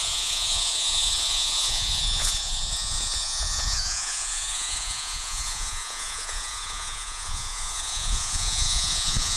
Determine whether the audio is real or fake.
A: fake